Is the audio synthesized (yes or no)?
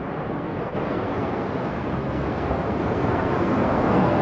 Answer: yes